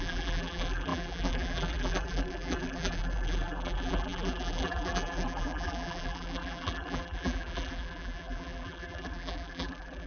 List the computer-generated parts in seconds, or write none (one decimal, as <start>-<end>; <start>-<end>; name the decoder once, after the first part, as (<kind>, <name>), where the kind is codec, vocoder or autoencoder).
0.0-10.1 (vocoder, BigVGAN v2)